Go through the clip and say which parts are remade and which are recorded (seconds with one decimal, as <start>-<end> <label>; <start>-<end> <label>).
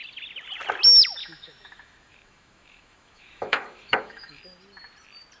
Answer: 0.0-1.2 recorded; 1.2-4.4 remade; 4.4-5.4 recorded